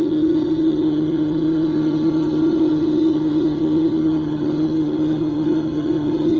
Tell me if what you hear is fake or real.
fake